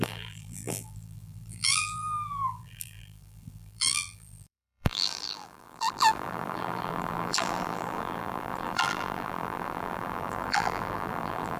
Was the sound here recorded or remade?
remade